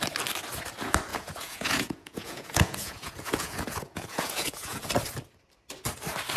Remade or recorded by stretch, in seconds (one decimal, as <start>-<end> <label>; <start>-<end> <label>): 0.0-1.1 recorded; 1.1-4.9 remade; 4.9-6.4 recorded